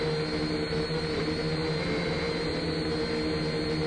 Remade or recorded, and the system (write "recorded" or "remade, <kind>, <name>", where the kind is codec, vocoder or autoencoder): recorded